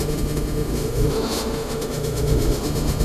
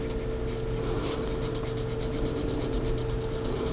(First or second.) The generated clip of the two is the first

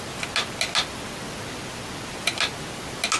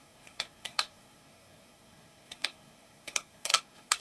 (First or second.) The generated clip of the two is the second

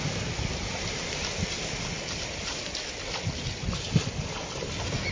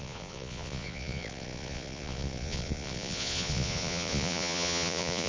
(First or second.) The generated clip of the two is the second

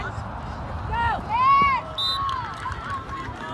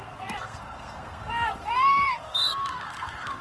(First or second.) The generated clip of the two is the second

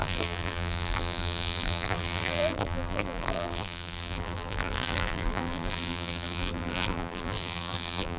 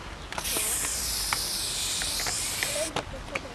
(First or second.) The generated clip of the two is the first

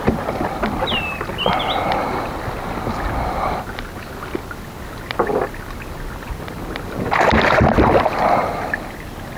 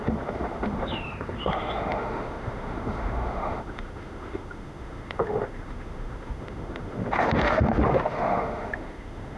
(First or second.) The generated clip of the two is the second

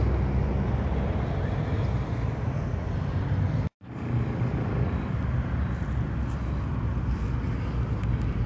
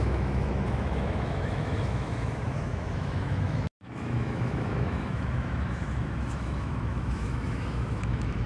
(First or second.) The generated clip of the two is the second